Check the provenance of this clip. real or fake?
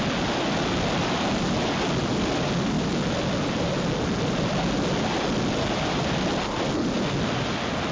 real